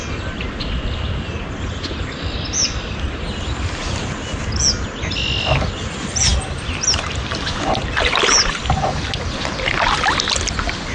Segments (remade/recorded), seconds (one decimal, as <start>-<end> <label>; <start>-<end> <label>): 0.0-6.3 recorded; 6.3-7.1 remade; 7.1-10.9 recorded